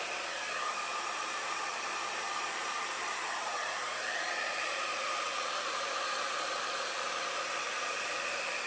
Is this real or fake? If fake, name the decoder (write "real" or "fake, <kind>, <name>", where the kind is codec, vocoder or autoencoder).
fake, vocoder, BigVGAN v2